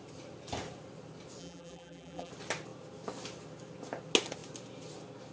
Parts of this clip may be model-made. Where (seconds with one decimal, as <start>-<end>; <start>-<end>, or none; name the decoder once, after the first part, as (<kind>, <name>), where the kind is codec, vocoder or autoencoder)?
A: 1.4-2.3 (vocoder, BigVGAN v2)